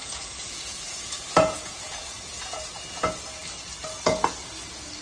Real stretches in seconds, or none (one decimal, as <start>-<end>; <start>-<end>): 3.0-5.0